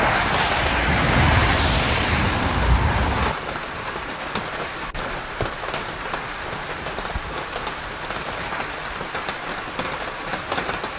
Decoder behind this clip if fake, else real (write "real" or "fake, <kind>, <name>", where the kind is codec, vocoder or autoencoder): real